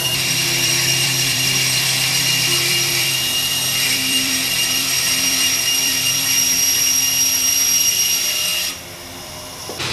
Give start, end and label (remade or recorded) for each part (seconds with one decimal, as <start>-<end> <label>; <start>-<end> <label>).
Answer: 0.0-8.5 remade; 8.5-9.1 recorded; 9.1-9.9 remade